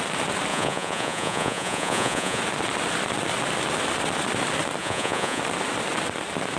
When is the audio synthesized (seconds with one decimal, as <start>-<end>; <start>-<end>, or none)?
0.5-2.4; 4.8-5.4